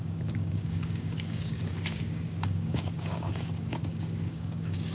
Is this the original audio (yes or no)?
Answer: no